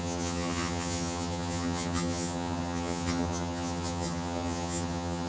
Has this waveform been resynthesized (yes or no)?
yes